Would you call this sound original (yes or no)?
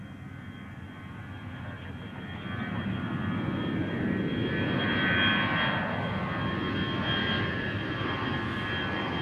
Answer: yes